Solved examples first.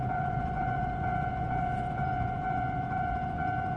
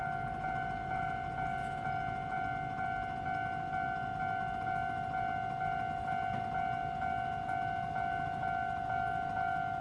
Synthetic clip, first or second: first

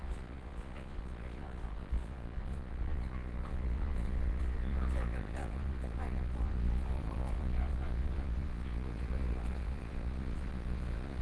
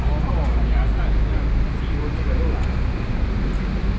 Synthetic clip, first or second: first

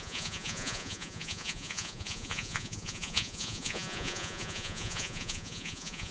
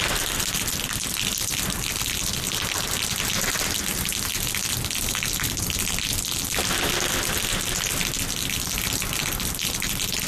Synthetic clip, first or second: first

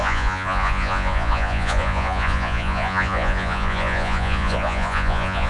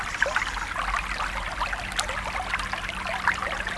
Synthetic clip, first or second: first